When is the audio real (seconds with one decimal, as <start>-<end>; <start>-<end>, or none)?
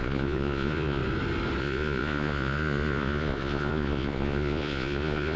1.0-1.6